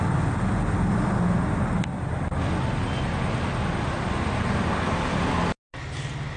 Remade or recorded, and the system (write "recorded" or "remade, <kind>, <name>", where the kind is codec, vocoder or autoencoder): recorded